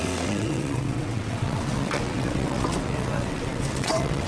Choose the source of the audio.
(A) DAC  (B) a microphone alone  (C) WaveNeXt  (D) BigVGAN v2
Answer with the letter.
C